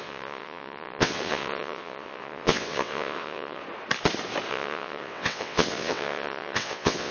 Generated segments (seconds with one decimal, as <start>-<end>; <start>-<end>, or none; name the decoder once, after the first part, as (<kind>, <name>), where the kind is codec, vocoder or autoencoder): 0.0-3.6 (vocoder, WaveNeXt); 4.5-7.1